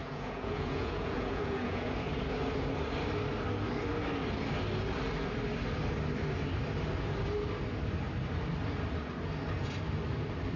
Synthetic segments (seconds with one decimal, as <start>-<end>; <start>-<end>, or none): 0.0-1.9